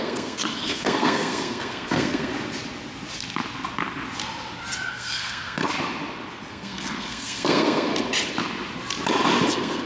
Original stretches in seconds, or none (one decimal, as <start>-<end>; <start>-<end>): 2.3-4.9; 5.6-6.5; 7.9-9.5